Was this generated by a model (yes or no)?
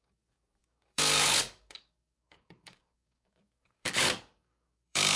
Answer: yes